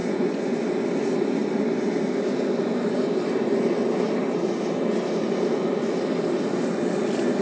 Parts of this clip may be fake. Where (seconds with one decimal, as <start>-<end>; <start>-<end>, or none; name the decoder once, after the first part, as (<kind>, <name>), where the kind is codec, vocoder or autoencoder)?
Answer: 0.0-0.5 (vocoder, Vocos)